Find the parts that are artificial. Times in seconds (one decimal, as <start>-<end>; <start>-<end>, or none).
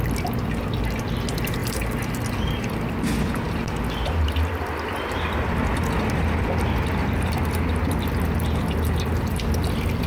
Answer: none